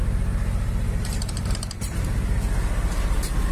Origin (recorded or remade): remade